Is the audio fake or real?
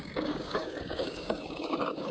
fake